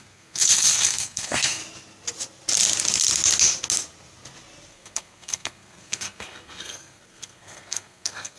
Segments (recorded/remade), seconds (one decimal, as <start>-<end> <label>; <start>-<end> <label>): 0.0-1.6 remade; 1.6-4.7 recorded; 4.7-8.4 remade